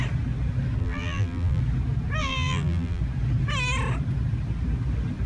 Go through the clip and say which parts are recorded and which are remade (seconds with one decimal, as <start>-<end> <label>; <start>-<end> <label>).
0.0-0.8 recorded; 0.8-1.6 remade; 1.6-2.2 recorded; 2.2-3.0 remade; 3.0-5.3 recorded